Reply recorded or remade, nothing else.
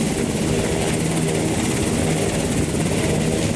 recorded